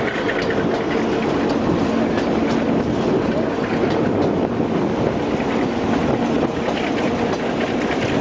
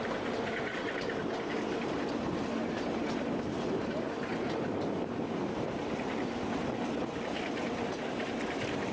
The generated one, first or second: second